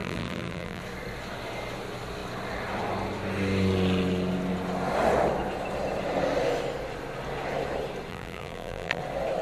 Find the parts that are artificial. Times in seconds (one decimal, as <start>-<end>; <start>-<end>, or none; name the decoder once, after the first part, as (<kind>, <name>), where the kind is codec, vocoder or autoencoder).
0.0-0.8 (vocoder, BigVGAN v2); 8.1-9.0